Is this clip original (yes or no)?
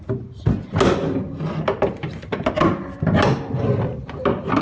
yes